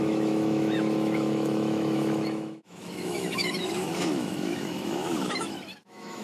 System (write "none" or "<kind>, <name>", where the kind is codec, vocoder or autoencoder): autoencoder, DAC-VAE